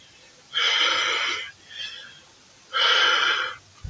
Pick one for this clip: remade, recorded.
recorded